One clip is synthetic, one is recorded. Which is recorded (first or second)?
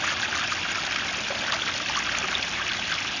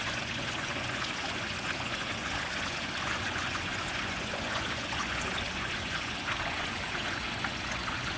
first